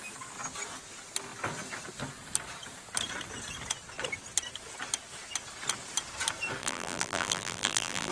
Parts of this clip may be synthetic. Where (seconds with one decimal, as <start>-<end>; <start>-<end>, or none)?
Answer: 6.6-8.1